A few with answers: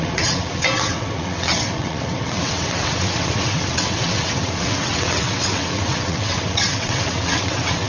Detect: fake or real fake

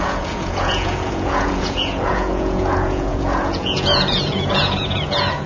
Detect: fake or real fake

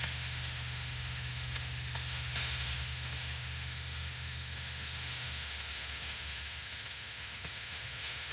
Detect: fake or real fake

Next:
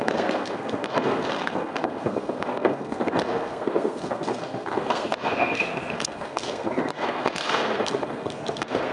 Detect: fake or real fake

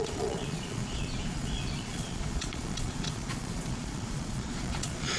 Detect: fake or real fake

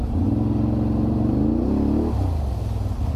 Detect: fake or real real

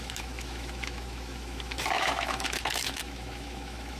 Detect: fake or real fake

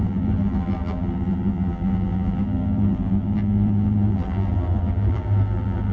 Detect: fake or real fake